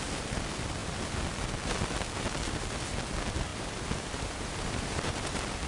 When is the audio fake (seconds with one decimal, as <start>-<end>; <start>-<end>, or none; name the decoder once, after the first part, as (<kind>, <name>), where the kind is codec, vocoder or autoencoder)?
3.5-5.3 (vocoder, BigVGAN v2)